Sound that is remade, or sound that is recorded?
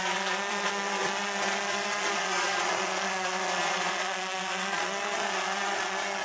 remade